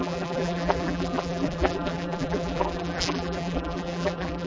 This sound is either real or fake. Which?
fake